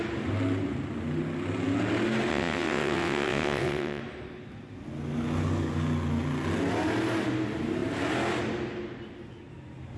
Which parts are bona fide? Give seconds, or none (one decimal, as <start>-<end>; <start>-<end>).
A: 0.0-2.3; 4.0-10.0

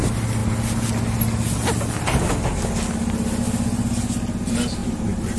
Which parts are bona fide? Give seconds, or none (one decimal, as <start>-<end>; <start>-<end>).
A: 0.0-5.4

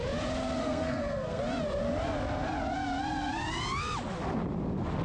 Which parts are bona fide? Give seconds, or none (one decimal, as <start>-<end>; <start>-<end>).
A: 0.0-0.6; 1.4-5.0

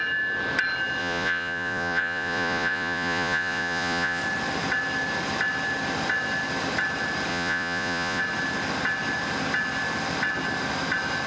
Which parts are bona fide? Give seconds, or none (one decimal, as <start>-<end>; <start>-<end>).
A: 0.0-1.0; 4.2-7.3; 8.2-11.3